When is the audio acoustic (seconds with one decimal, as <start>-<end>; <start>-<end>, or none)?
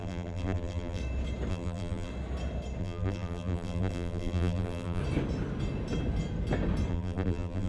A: 1.0-1.5; 2.1-2.8; 5.0-6.9